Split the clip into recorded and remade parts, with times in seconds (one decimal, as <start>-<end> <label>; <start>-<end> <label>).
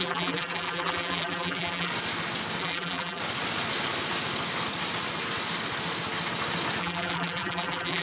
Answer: 0.0-1.9 remade; 1.9-2.6 recorded; 2.6-3.2 remade; 3.2-6.8 recorded; 6.8-8.0 remade